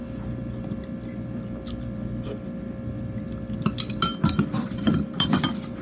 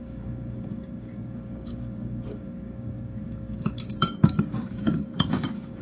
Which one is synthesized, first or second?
second